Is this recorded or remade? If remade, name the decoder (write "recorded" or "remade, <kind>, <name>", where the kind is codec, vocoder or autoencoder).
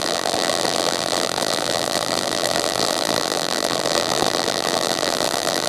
remade, vocoder, BigVGAN v2